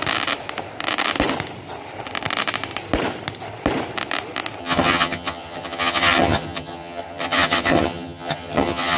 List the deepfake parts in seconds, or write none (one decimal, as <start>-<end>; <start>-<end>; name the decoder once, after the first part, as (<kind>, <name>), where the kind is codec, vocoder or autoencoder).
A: 4.6-9.0 (vocoder, HiFi-GAN)